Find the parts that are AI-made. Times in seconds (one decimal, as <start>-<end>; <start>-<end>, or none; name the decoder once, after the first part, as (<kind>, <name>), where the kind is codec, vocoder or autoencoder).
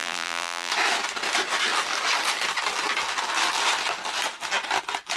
0.0-0.7 (vocoder, BigVGAN v2)